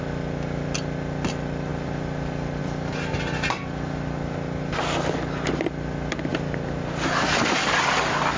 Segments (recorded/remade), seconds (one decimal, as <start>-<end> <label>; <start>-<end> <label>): 0.0-1.7 recorded; 1.7-2.6 remade; 2.6-6.3 recorded; 6.3-7.3 remade; 7.3-8.4 recorded